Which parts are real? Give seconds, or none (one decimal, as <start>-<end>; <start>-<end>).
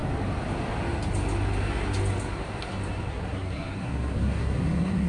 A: 0.0-3.1